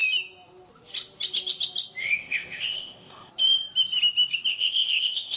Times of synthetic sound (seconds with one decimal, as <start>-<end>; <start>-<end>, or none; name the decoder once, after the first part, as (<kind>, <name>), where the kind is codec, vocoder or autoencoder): 2.0-3.3 (codec, ZipCodec); 4.5-5.4